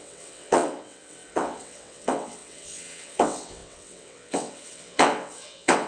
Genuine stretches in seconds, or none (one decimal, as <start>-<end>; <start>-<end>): none